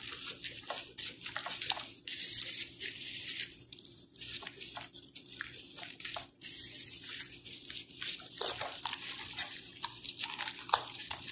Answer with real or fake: fake